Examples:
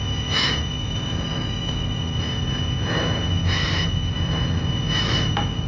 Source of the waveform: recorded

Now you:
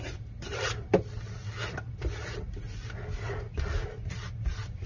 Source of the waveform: recorded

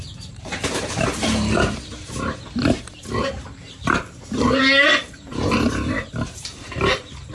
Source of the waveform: remade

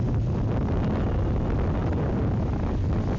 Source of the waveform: recorded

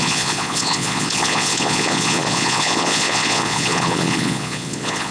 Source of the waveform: remade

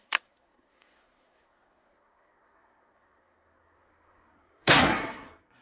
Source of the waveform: remade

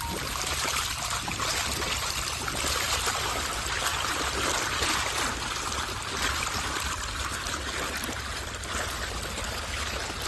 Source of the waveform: recorded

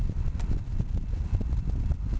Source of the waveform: recorded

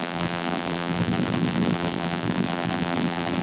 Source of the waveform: remade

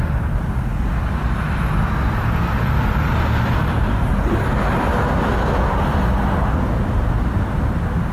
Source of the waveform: recorded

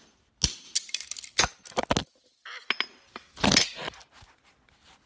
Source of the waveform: recorded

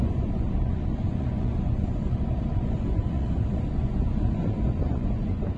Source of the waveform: remade